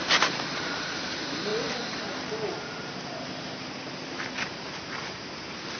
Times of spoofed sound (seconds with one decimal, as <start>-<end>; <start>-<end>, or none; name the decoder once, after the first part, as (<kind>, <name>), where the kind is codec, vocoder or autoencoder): none